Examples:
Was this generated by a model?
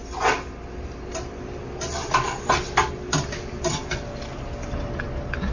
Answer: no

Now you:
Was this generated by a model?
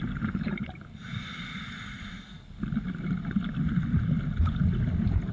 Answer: no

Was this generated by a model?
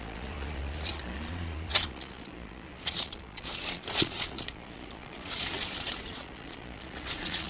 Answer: yes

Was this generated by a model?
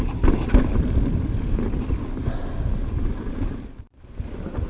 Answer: no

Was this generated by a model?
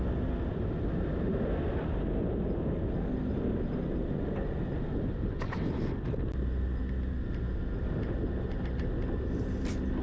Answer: no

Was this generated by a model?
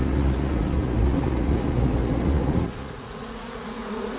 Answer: yes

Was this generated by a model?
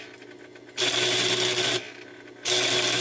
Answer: no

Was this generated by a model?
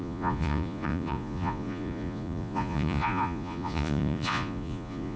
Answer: yes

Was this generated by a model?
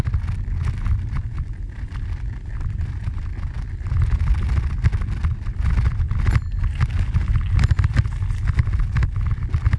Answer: no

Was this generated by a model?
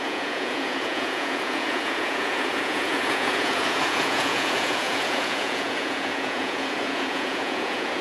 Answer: yes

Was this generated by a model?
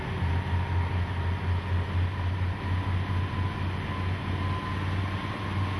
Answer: no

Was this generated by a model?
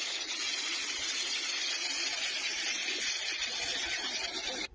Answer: no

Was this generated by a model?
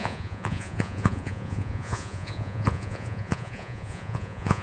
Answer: yes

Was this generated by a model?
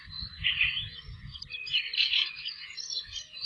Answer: no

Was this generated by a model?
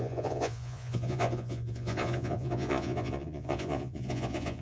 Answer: yes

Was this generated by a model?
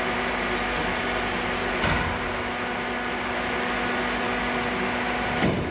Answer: no